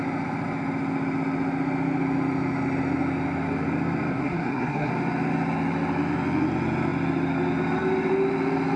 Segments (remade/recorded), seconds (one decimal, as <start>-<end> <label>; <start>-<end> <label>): 0.0-4.1 recorded; 4.1-4.9 remade; 4.9-8.8 recorded